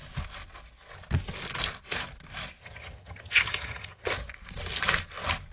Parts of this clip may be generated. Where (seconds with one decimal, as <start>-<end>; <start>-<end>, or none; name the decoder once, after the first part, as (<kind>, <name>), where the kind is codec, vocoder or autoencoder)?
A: 2.6-4.1 (vocoder, HiFi-GAN)